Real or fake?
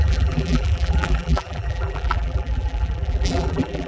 fake